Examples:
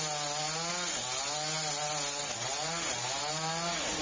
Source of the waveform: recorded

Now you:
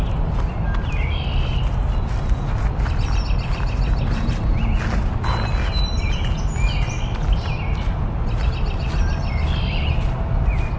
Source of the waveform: recorded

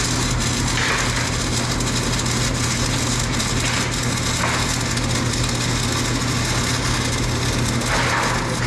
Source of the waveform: recorded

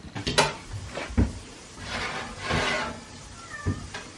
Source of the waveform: recorded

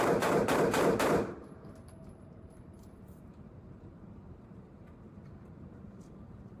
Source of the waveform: remade